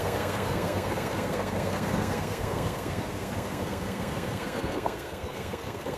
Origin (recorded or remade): remade